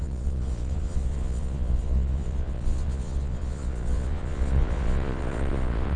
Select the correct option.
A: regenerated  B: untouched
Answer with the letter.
A